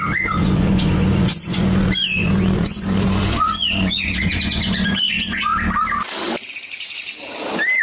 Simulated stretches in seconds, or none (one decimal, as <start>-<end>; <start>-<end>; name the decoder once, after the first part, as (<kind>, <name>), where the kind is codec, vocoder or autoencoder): 0.0-5.5 (vocoder, Vocos)